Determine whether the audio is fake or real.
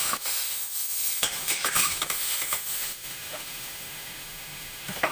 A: fake